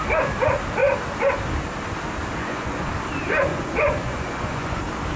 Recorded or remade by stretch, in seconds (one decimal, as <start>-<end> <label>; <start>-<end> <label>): 0.0-2.4 recorded; 2.4-2.9 remade; 2.9-3.5 recorded; 3.5-4.8 remade; 4.8-5.2 recorded